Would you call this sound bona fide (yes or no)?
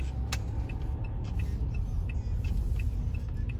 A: yes